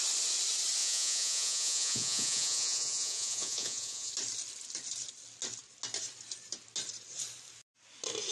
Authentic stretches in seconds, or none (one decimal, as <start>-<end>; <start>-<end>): 0.0-0.8; 4.1-8.3